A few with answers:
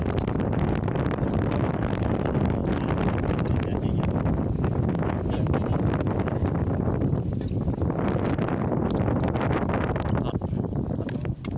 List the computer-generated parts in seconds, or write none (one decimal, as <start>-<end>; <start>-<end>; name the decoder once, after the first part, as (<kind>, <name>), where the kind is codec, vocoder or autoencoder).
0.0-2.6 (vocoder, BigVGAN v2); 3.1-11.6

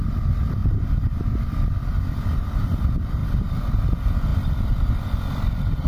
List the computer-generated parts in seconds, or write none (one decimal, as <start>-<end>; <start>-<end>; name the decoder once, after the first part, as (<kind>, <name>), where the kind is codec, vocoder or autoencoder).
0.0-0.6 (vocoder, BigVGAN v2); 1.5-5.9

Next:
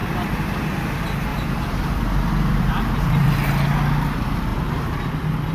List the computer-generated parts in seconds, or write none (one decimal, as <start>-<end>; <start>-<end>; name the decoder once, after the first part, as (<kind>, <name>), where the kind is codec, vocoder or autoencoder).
0.0-0.6 (vocoder, BigVGAN v2); 1.3-3.3; 4.5-5.1